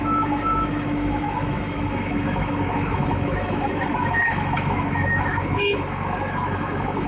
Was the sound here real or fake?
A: fake